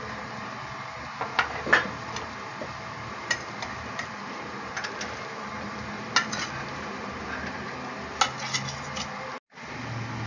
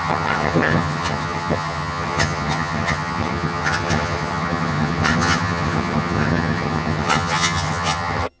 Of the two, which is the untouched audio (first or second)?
first